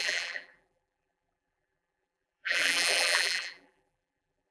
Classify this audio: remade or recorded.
remade